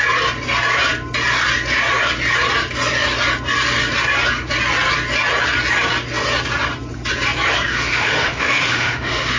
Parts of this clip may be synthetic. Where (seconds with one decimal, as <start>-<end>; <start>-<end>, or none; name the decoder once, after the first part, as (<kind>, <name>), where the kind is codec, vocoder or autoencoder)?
7.7-9.4 (autoencoder, DAC-VAE)